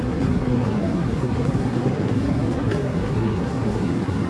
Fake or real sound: fake